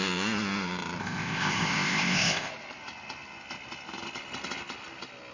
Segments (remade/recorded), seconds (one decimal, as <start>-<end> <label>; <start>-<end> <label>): 0.0-1.0 recorded; 1.0-2.5 remade; 2.5-5.3 recorded